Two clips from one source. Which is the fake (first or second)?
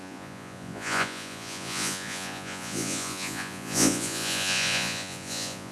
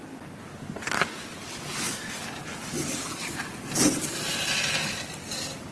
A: first